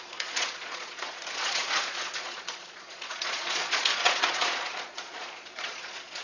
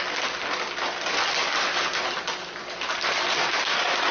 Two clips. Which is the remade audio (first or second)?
first